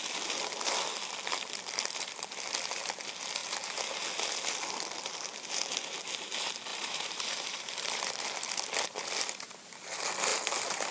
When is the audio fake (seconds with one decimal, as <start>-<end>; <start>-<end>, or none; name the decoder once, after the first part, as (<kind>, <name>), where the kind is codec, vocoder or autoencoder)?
6.7-8.1 (vocoder, BigVGAN v2); 10.3-10.9